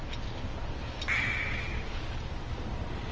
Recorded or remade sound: recorded